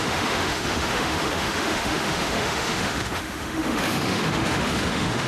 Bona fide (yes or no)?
no